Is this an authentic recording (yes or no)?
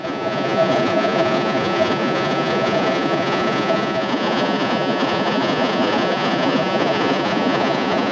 no